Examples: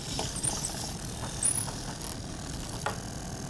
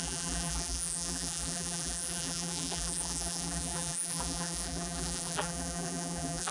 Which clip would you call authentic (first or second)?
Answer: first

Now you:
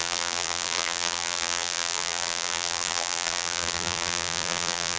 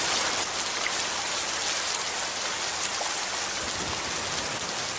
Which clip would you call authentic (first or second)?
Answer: second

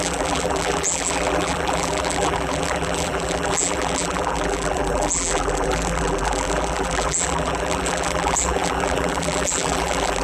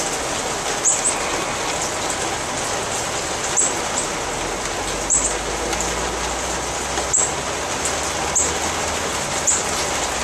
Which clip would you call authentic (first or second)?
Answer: second